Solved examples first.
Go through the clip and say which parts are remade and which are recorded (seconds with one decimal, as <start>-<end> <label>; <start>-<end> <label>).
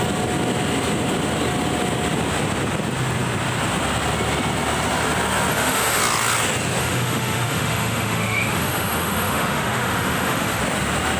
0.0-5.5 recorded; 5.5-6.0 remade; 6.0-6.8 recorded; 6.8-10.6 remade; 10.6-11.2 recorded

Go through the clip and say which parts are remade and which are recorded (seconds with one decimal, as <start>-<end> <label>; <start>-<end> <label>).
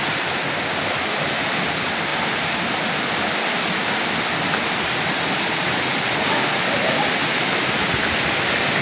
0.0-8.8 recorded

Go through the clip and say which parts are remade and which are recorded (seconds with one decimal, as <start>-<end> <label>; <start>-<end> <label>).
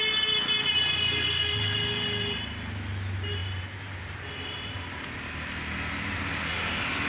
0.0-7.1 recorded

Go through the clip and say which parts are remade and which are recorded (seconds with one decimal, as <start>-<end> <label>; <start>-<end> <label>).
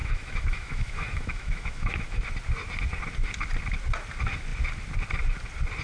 0.0-2.2 remade; 2.2-5.8 recorded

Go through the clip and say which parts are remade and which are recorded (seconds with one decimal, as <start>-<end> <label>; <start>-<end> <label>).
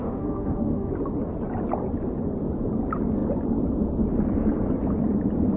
0.0-0.9 remade; 0.9-5.6 recorded